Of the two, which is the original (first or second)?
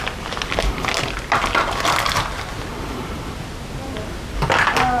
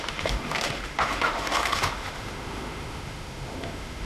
first